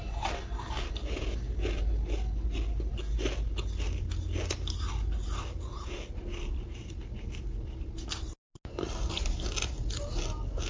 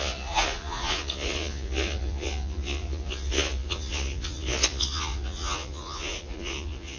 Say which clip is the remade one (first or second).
second